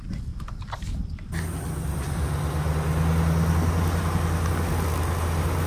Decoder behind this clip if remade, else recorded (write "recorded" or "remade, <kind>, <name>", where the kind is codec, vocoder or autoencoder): recorded